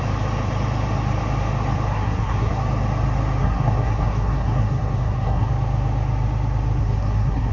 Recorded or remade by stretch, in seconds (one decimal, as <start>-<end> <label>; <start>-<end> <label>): 0.0-1.9 recorded; 1.9-2.6 remade; 2.6-3.4 recorded; 3.4-5.5 remade; 5.5-6.8 recorded; 6.8-7.5 remade